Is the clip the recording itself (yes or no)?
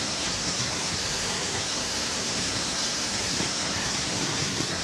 no